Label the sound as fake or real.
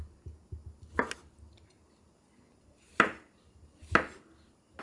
real